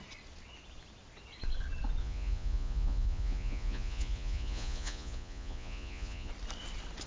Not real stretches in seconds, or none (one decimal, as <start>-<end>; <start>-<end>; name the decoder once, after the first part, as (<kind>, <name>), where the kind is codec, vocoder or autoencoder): 2.0-6.3 (vocoder, Vocos)